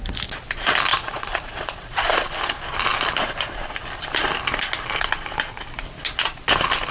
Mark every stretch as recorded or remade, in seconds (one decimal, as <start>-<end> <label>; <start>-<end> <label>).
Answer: 0.0-0.9 recorded; 0.9-2.2 remade; 2.2-6.9 recorded